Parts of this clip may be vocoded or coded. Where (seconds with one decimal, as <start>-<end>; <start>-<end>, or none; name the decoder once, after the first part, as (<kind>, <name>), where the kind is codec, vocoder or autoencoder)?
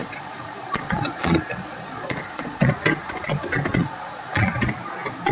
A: 0.0-2.7 (vocoder, Vocos); 3.8-4.5